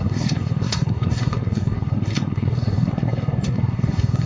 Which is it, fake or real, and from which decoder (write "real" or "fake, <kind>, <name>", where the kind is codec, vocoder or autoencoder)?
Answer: fake, codec, SNAC